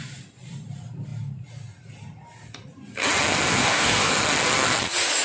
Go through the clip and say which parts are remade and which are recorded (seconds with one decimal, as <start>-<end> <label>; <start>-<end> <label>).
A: 0.0-3.6 recorded; 3.6-4.1 remade; 4.1-5.2 recorded